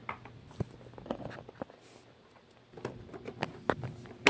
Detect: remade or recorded recorded